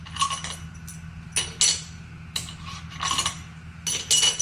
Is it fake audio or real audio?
real